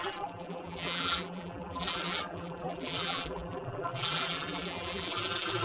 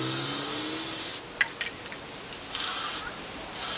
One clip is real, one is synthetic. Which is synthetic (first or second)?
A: first